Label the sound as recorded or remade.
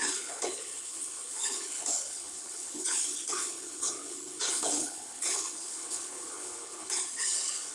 remade